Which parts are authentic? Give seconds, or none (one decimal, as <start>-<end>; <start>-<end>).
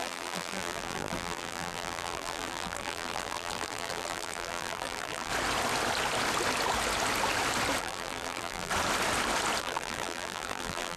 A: 5.3-7.8; 8.7-9.6